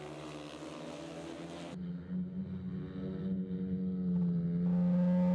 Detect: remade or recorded recorded